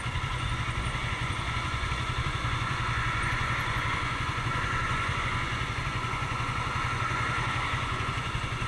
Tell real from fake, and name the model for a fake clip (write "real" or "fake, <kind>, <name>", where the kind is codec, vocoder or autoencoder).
fake, vocoder, Vocos